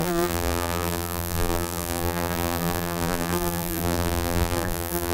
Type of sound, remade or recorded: remade